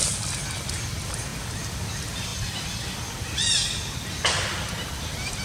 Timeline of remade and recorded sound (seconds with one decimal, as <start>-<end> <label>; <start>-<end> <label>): 0.0-5.4 recorded